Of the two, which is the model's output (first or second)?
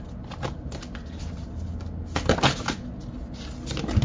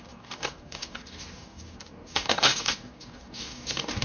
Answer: second